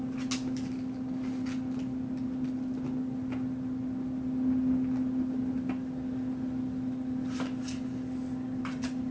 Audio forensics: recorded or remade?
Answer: recorded